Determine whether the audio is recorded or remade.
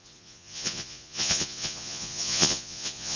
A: remade